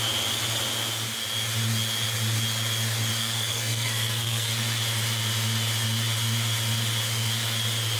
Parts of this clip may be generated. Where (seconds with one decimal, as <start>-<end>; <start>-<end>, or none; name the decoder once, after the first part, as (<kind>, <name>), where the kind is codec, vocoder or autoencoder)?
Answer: 3.2-4.5 (codec, SNAC)